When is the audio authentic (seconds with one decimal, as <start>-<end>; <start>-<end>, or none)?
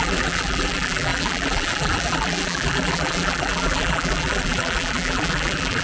none